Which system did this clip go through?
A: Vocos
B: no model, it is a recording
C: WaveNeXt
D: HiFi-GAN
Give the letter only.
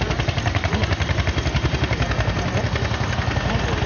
B